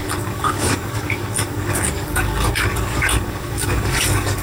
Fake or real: fake